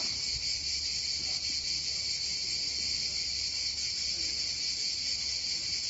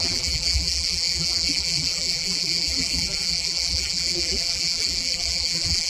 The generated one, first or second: second